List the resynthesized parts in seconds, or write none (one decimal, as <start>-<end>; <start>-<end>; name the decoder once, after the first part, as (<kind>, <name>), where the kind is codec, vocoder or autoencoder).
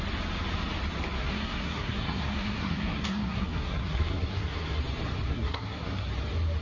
1.2-4.8 (codec, SNAC); 5.3-6.1